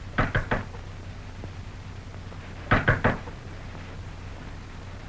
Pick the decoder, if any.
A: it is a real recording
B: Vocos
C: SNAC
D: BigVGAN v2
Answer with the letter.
A